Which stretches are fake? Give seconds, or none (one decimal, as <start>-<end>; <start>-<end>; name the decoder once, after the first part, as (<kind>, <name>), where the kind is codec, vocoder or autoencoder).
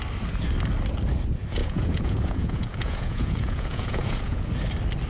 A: 1.6-4.5 (vocoder, Vocos)